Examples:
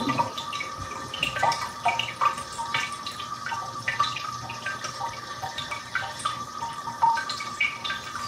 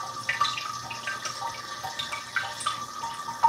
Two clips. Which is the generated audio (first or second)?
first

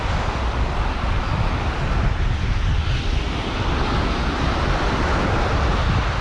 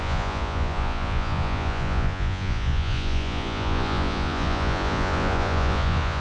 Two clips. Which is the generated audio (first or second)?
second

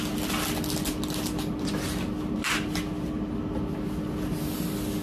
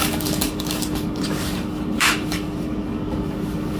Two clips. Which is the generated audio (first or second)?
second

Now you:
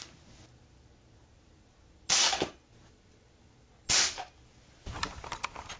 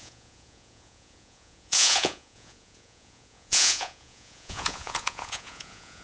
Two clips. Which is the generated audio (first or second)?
second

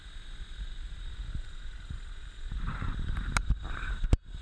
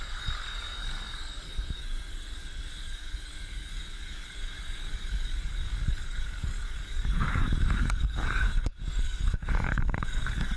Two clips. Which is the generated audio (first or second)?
second